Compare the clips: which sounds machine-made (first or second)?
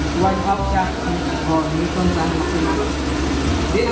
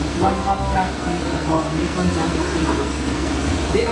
second